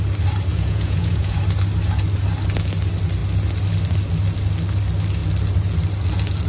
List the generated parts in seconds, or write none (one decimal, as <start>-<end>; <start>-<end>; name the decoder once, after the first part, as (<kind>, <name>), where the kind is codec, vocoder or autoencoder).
0.5-1.4 (vocoder, Vocos)